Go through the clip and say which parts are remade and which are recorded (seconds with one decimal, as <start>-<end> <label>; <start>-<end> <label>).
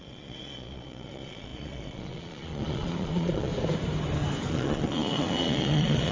0.0-3.5 remade; 3.5-4.5 recorded; 4.5-6.1 remade